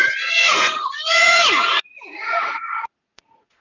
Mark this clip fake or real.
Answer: fake